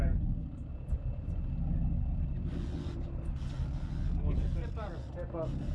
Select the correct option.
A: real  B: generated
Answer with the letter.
A